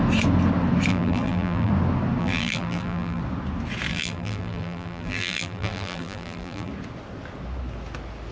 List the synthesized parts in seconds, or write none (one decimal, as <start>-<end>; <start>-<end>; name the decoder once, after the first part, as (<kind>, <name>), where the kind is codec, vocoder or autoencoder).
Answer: 0.9-1.7 (vocoder, BigVGAN v2); 2.2-3.2; 3.9-6.7